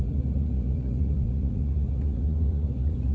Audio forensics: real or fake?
fake